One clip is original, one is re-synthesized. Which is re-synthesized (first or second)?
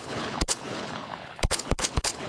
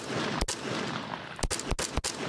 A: first